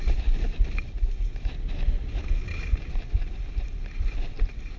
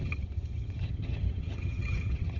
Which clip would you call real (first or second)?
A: first